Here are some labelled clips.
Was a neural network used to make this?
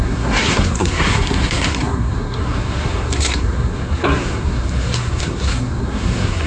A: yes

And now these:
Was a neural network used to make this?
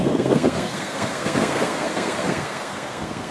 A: yes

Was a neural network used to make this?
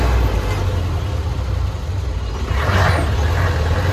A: no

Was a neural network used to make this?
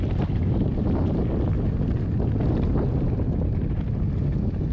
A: no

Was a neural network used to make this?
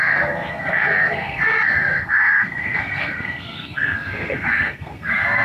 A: yes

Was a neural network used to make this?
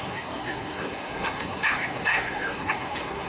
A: yes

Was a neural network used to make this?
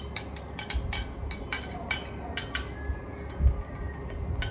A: no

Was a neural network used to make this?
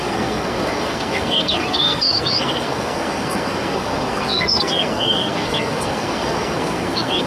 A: yes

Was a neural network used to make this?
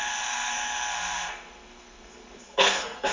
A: yes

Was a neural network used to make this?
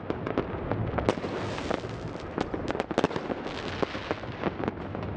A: no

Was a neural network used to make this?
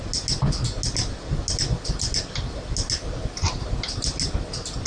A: no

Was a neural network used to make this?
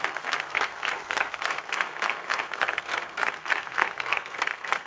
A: yes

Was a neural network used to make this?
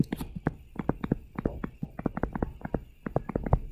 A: no